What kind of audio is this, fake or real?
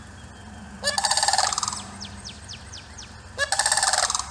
real